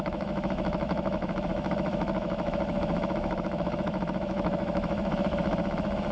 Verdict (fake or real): fake